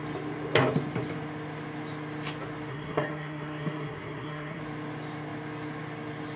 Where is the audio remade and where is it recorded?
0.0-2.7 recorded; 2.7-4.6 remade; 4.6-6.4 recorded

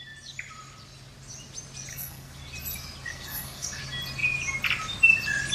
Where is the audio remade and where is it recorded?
0.0-1.9 recorded; 1.9-2.4 remade; 2.4-3.1 recorded; 3.1-3.8 remade; 3.8-5.5 recorded

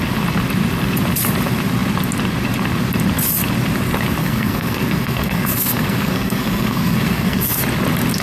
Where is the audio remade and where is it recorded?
0.0-4.2 recorded; 4.2-7.6 remade; 7.6-8.2 recorded

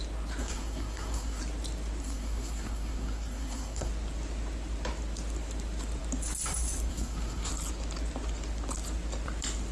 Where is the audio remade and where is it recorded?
0.0-0.4 recorded; 0.4-1.4 remade; 1.4-2.0 recorded; 2.0-3.9 remade; 3.9-6.9 recorded; 6.9-7.5 remade; 7.5-9.7 recorded